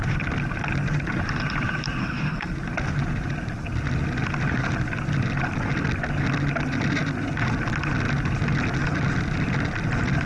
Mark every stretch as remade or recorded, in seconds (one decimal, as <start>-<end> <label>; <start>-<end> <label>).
0.0-2.0 recorded; 2.0-2.5 remade; 2.5-10.3 recorded

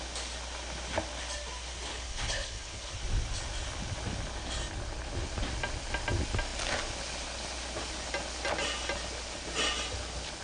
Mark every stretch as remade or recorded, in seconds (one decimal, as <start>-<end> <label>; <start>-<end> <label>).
0.0-1.9 recorded; 1.9-2.9 remade; 2.9-10.4 recorded

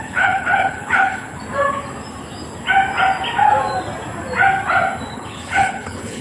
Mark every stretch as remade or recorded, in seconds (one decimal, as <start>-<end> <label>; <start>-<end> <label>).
0.0-1.4 remade; 1.4-5.1 recorded; 5.1-6.2 remade